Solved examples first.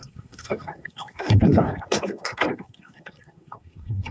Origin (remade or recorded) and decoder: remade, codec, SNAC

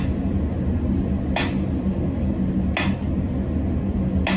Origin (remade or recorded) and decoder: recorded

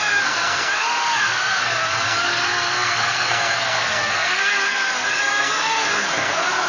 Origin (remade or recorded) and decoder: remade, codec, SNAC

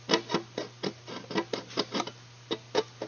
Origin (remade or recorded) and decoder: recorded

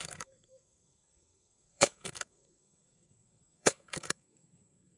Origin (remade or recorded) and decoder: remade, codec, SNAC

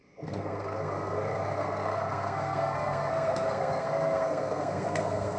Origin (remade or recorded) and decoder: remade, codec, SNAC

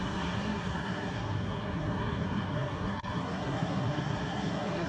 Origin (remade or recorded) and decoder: remade, codec, SNAC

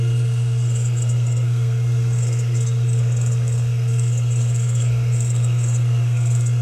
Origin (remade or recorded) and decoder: remade, codec, SNAC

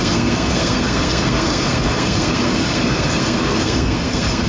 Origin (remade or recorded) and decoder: remade, codec, SNAC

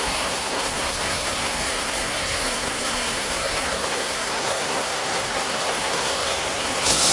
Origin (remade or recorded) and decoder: remade, codec, SNAC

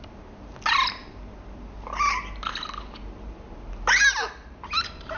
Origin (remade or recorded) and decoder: recorded